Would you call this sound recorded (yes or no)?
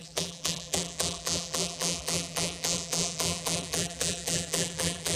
no